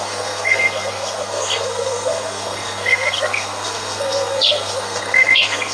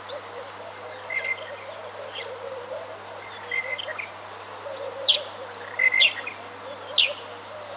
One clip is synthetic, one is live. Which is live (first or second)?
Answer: second